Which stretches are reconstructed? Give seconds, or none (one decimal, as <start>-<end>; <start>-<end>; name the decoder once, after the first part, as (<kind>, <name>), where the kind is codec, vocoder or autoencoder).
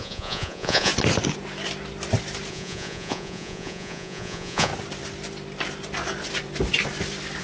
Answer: 0.0-0.9 (vocoder, Vocos); 2.5-4.7